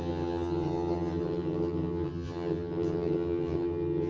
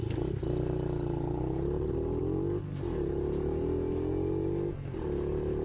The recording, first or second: second